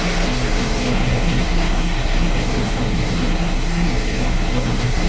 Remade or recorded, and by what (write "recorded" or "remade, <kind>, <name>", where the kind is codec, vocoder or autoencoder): remade, codec, SNAC